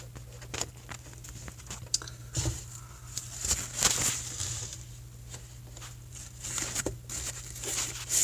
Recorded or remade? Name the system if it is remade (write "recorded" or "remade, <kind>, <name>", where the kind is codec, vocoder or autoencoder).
remade, vocoder, BigVGAN v2